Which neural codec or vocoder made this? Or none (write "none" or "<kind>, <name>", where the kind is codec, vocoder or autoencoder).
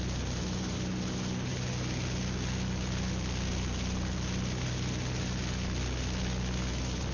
none